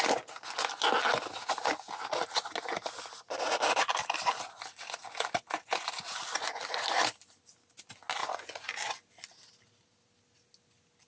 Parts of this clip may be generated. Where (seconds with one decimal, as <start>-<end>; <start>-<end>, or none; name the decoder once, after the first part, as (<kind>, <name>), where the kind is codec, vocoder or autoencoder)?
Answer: 8.2-8.7 (vocoder, Vocos)